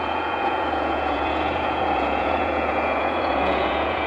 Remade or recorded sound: remade